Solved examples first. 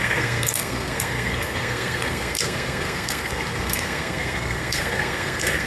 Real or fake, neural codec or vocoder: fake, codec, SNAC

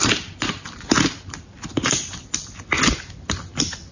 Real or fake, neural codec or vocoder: real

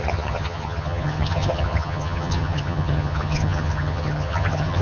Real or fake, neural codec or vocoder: fake, vocoder, HiFi-GAN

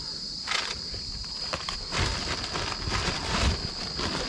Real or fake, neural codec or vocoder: real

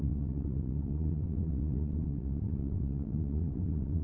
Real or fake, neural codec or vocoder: fake, vocoder, WaveNeXt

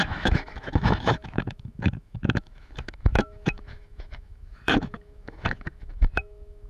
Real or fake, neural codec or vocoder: fake, autoencoder, DAC-VAE